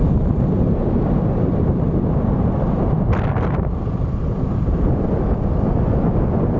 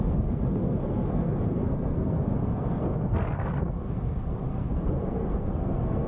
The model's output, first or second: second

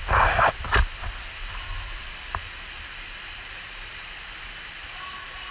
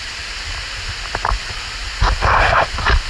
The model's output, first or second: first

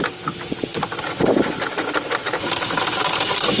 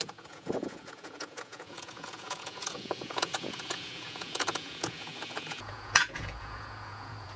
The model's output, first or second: second